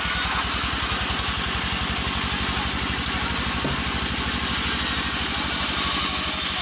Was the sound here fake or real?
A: real